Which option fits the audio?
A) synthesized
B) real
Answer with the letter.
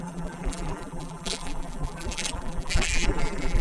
A